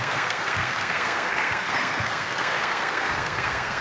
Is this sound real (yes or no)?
no